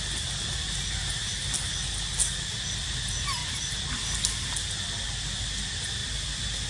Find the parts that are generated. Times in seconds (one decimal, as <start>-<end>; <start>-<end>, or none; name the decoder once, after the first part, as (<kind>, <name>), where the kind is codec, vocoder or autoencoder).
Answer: none